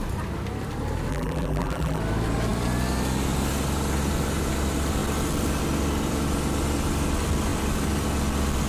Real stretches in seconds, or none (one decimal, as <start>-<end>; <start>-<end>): 0.0-1.1; 2.0-8.7